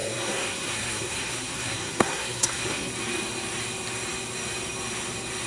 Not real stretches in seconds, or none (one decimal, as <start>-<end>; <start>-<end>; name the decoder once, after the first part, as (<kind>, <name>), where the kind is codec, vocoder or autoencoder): 0.0-2.9 (codec, SNAC)